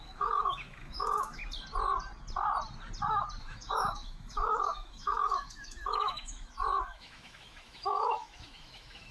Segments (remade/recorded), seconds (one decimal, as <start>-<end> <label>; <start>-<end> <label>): 0.0-1.4 remade; 1.4-3.4 recorded; 3.4-9.1 remade